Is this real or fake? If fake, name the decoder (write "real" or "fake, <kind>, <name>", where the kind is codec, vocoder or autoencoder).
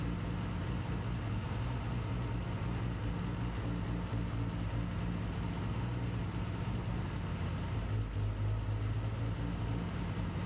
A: real